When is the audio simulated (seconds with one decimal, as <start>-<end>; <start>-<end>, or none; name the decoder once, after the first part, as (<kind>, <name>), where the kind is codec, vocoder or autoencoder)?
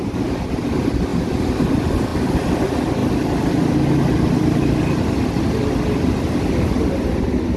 none